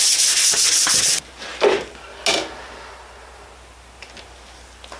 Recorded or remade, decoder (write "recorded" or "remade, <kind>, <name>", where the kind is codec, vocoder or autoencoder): recorded